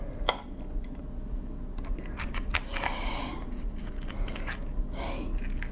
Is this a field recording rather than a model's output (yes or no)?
yes